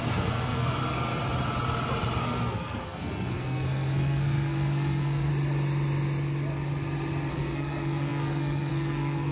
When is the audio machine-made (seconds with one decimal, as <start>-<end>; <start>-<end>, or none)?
0.0-0.8; 2.2-5.3; 7.3-9.3